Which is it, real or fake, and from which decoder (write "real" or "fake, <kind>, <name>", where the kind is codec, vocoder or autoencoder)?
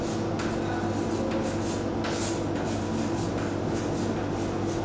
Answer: real